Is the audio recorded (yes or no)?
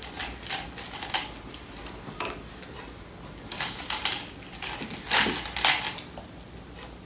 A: yes